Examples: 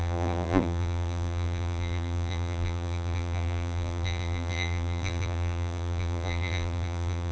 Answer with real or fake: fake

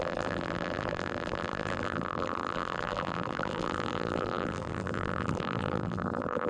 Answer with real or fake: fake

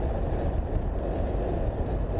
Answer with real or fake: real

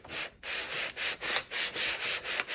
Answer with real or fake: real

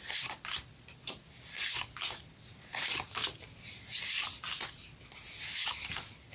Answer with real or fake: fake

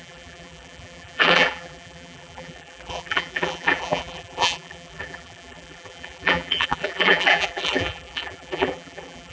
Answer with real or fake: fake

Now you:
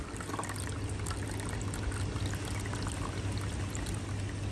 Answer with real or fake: real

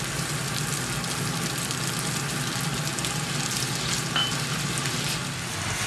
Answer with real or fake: real